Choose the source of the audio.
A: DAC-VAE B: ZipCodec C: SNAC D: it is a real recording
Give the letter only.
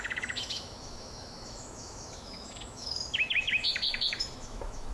A